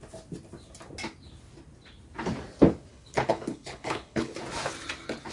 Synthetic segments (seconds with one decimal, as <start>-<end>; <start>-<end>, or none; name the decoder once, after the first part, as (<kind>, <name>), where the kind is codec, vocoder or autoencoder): 2.9-4.3 (codec, HILCodec)